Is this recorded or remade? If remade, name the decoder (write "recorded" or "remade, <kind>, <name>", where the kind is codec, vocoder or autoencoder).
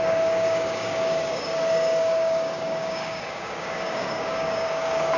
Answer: remade, codec, DAC